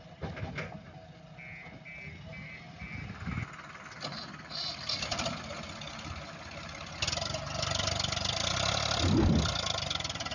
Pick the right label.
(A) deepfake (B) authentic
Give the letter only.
B